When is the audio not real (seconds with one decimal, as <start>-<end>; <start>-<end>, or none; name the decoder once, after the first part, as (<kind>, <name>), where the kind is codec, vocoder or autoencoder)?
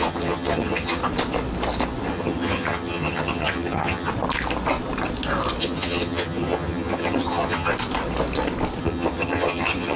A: 0.0-1.0 (vocoder, HiFi-GAN); 2.1-4.1; 5.6-7.7; 8.8-10.0